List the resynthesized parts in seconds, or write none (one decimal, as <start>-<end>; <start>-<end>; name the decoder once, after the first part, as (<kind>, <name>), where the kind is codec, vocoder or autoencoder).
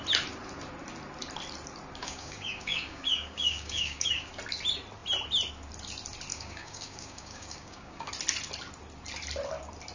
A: 2.0-4.3 (codec, DAC); 6.3-8.1